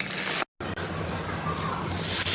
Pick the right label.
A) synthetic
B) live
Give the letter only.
B